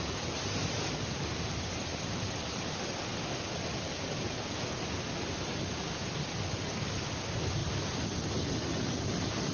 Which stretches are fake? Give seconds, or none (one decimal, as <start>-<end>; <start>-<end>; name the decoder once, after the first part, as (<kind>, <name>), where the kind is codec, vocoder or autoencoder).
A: none